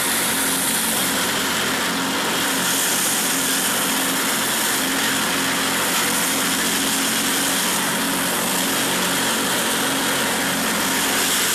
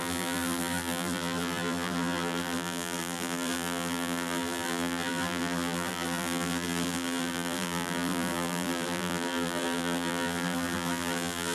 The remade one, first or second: second